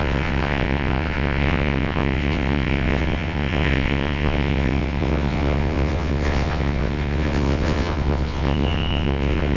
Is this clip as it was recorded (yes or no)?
no